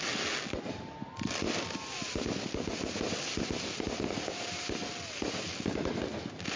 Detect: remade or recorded recorded